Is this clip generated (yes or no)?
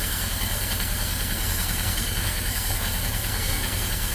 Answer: yes